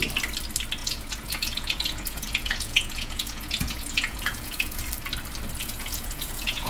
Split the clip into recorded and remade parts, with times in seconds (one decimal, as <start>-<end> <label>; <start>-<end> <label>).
0.0-0.8 recorded; 0.8-4.8 remade; 4.8-5.6 recorded; 5.6-6.7 remade